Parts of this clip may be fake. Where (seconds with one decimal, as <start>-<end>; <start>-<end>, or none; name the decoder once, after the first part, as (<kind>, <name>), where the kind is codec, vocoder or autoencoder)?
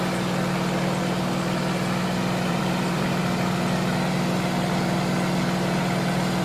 2.5-3.2 (vocoder, BigVGAN v2)